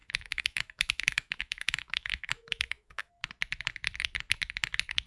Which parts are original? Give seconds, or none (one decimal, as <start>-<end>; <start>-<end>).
3.1-5.1